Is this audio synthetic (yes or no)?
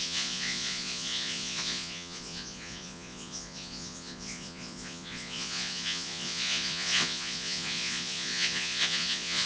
yes